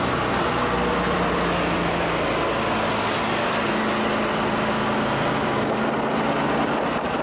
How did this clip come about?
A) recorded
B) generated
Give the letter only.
A